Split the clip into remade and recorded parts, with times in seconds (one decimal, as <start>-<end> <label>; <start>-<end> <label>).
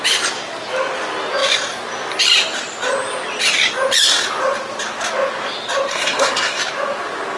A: 0.0-5.9 recorded; 5.9-6.6 remade; 6.6-7.4 recorded